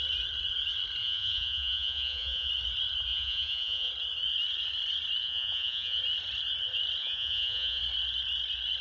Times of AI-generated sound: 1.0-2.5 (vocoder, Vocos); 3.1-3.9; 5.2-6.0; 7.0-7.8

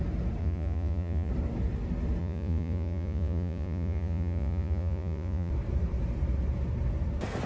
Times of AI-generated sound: 0.4-1.3 (vocoder, Vocos); 2.2-5.5

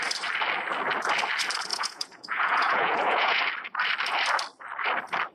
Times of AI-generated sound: 1.7-3.4 (vocoder, Vocos)

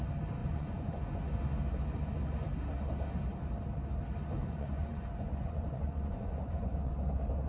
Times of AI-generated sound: 0.4-1.2 (vocoder, Vocos); 4.4-6.9

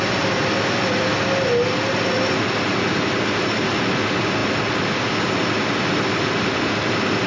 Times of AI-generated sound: none